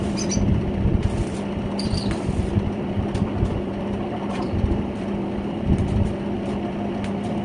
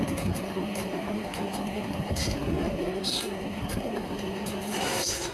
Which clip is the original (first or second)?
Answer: first